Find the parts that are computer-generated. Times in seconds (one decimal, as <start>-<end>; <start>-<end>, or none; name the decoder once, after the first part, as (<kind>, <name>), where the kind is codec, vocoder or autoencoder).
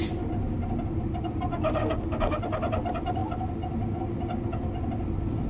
1.8-2.4 (codec, DAC)